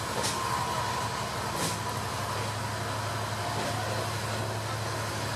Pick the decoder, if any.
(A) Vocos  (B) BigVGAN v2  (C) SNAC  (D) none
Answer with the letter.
D